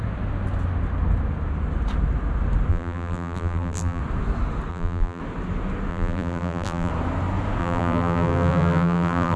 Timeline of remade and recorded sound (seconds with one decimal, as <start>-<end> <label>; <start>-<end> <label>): 0.0-2.7 recorded; 2.7-4.0 remade; 4.0-4.7 recorded; 4.7-5.2 remade; 5.2-5.9 recorded; 5.9-6.9 remade; 6.9-7.6 recorded; 7.6-9.4 remade